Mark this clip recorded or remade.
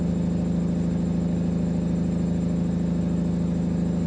recorded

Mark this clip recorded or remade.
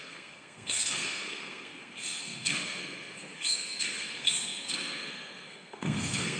remade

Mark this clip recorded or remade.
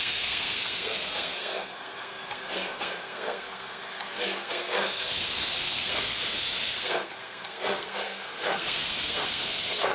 remade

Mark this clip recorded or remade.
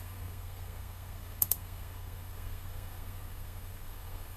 remade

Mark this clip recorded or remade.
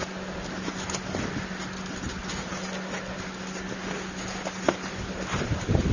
recorded